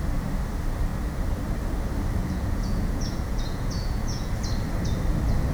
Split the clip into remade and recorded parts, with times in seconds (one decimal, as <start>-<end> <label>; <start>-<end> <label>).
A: 0.0-2.2 recorded; 2.2-4.3 remade; 4.3-5.5 recorded